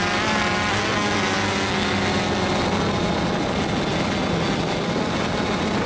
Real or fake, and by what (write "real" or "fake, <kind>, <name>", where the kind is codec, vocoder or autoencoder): real